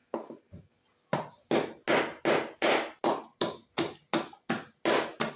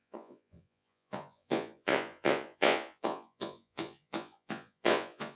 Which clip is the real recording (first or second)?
first